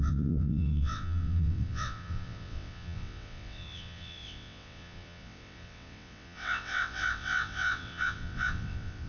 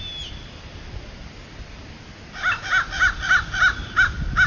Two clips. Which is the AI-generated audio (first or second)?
first